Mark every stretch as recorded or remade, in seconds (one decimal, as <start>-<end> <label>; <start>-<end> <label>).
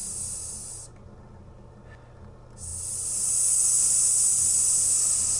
0.0-5.4 recorded